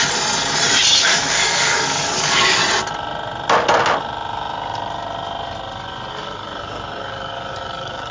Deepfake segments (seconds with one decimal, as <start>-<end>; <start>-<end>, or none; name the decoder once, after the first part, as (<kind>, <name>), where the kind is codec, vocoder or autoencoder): 1.0-2.6 (codec, DAC); 6.1-8.1